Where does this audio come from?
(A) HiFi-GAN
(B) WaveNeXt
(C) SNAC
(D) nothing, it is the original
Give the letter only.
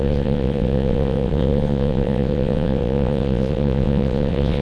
B